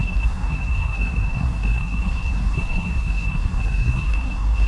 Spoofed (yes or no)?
yes